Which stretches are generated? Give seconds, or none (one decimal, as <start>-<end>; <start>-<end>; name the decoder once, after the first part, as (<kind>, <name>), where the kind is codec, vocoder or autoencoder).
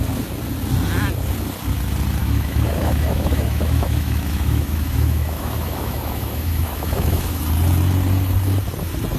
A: 2.2-7.4 (autoencoder, DAC-VAE)